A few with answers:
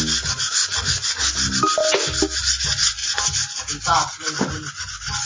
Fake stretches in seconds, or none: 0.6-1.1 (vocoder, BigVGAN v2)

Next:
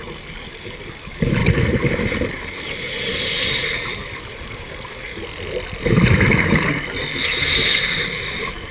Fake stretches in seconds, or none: 0.0-1.4 (vocoder, BigVGAN v2); 2.3-5.1; 5.9-8.7

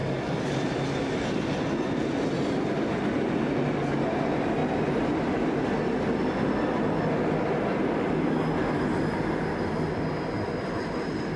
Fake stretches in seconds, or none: 0.0-0.5 (codec, DAC)

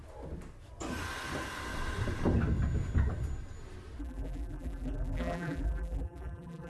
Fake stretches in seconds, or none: 4.0-6.7 (vocoder, BigVGAN v2)